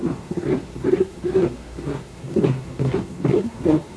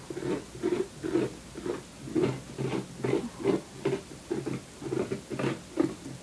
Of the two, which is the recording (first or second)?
second